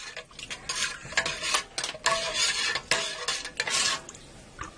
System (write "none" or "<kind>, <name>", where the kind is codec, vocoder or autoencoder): none